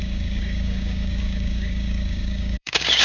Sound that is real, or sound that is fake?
fake